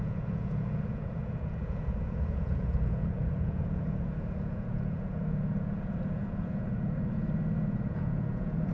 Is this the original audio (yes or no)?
no